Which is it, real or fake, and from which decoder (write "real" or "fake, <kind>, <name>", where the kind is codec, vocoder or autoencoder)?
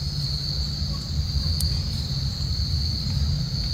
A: real